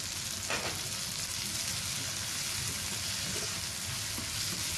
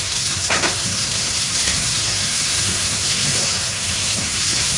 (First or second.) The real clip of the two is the first